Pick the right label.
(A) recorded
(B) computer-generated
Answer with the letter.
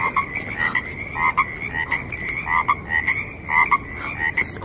A